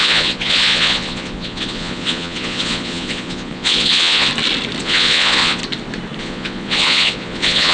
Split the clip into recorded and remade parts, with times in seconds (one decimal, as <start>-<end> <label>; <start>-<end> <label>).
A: 0.0-4.3 remade; 4.3-4.8 recorded; 4.8-5.6 remade; 5.6-6.2 recorded; 6.2-7.7 remade

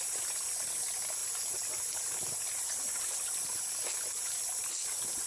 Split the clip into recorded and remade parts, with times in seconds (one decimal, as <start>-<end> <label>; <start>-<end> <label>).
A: 0.0-5.3 recorded

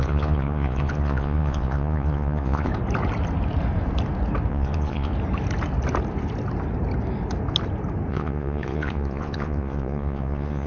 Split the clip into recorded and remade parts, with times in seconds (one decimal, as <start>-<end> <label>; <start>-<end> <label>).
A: 0.0-2.7 remade; 2.7-4.5 recorded; 4.5-5.1 remade; 5.1-8.1 recorded; 8.1-10.7 remade

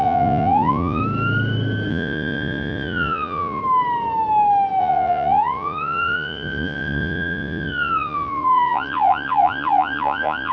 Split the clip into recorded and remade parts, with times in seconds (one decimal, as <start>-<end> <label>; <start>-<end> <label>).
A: 0.0-1.0 remade; 1.0-1.9 recorded; 1.9-3.6 remade; 3.6-4.8 recorded; 4.8-10.5 remade

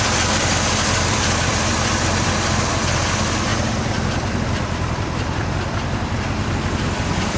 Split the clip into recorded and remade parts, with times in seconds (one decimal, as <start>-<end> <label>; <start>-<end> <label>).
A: 0.0-7.4 recorded

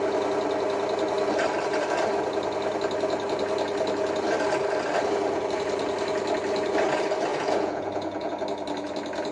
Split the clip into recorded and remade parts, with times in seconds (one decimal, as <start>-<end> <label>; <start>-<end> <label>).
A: 0.0-7.3 recorded; 7.3-8.3 remade; 8.3-9.3 recorded

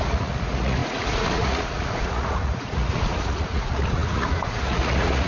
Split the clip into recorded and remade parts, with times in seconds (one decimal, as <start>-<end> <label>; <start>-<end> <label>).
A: 0.0-5.3 remade